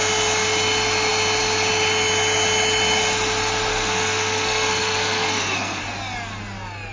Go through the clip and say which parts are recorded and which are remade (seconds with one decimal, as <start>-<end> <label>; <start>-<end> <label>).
0.0-3.7 recorded; 3.7-5.8 remade; 5.8-6.9 recorded